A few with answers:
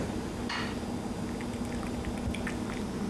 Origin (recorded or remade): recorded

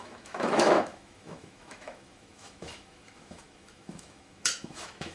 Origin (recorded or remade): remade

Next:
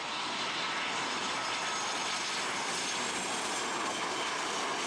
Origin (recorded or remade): recorded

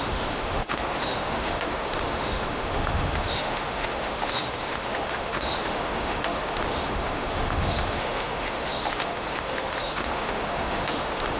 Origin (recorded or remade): remade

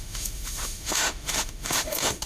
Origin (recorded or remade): remade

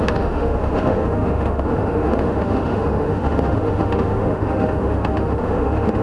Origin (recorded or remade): remade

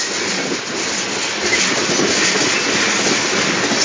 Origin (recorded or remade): recorded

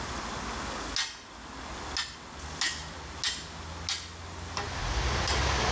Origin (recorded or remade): recorded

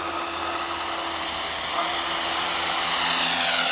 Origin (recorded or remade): recorded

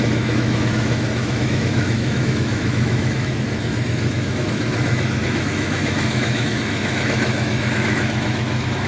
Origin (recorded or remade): remade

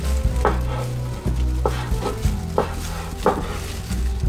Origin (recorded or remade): recorded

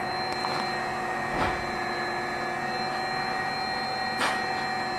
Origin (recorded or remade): recorded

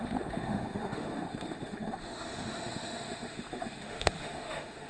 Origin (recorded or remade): remade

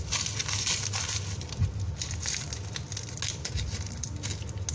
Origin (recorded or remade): recorded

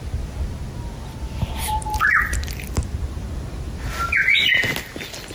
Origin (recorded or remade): recorded